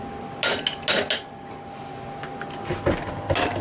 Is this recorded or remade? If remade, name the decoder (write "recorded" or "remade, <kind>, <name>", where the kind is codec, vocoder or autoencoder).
recorded